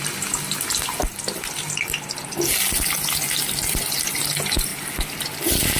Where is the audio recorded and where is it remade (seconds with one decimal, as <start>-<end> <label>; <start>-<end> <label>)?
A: 0.0-5.8 recorded